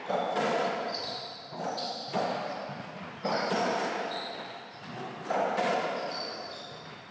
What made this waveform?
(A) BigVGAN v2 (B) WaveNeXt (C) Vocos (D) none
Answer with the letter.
D